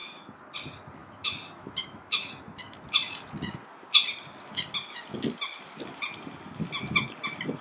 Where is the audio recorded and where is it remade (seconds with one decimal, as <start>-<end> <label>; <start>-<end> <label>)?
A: 0.0-0.5 remade; 0.5-1.0 recorded; 1.0-2.3 remade; 2.3-7.6 recorded